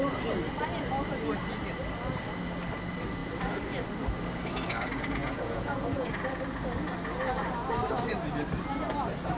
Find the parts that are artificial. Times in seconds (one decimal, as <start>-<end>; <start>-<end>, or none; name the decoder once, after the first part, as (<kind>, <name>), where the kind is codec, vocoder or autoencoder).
5.2-6.1 (vocoder, Vocos)